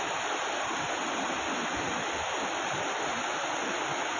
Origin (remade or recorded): recorded